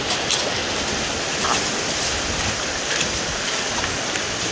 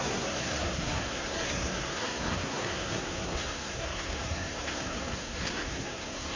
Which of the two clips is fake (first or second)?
second